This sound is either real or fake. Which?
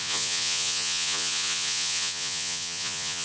fake